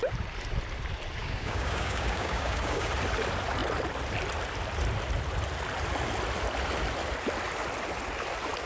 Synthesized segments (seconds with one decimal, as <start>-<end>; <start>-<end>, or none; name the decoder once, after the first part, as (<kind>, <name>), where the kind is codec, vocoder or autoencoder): 1.2-2.9 (codec, DAC)